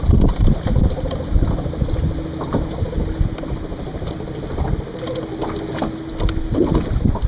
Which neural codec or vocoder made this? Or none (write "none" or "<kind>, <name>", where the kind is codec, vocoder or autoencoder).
none